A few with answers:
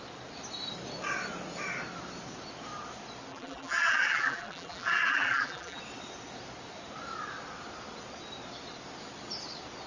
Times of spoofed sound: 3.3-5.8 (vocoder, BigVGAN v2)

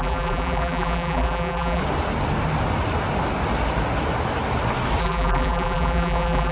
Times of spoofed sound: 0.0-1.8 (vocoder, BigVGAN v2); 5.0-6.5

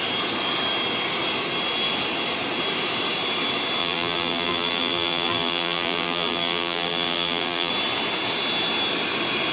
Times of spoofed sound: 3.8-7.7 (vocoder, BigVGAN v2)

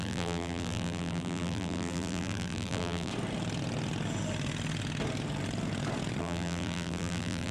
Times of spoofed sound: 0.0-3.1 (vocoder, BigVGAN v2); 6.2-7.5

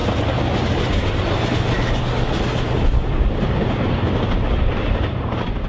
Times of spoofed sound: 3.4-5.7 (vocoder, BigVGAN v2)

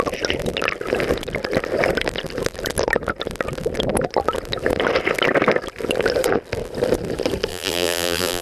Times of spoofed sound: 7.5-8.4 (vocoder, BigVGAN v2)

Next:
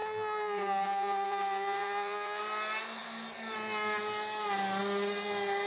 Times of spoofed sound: 0.0-2.4 (vocoder, BigVGAN v2)